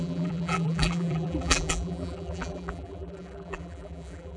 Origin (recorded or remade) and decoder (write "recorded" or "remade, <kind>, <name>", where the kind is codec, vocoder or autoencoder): remade, vocoder, BigVGAN v2